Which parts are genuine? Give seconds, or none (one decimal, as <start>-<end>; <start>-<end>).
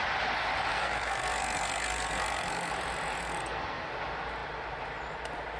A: 0.0-0.7; 2.7-3.2; 3.9-5.6